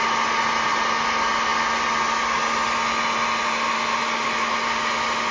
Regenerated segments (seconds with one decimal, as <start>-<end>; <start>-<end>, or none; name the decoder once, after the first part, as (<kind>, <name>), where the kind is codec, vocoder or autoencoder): none